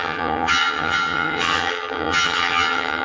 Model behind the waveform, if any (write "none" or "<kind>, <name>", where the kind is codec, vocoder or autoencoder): vocoder, HiFi-GAN